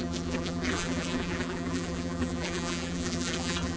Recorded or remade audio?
remade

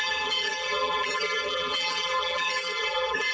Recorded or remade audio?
remade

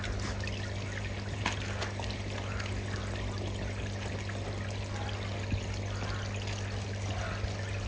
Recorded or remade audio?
recorded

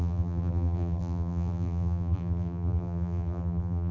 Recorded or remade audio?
remade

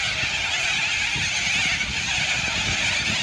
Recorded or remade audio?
recorded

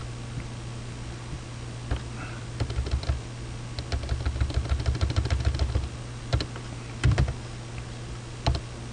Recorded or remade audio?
recorded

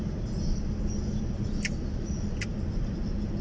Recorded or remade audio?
recorded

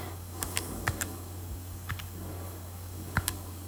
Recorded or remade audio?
remade